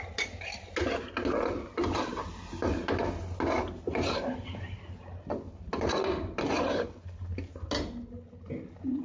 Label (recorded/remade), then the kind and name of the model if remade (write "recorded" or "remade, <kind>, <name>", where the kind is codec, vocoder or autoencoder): recorded